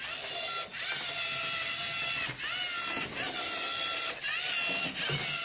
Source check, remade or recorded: recorded